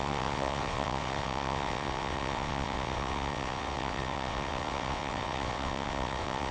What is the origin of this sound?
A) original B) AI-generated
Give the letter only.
B